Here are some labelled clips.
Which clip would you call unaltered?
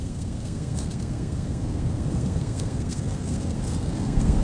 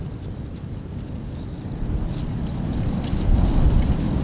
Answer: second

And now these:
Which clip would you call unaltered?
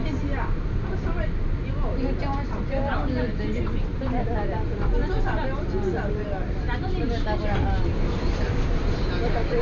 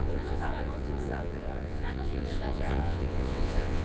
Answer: first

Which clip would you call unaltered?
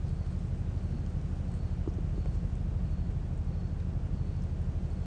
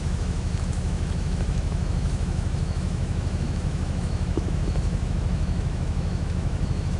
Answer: first